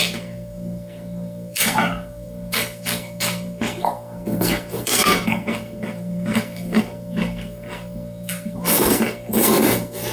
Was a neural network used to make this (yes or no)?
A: yes